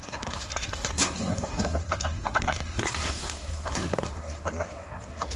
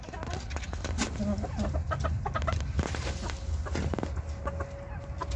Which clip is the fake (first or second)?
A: first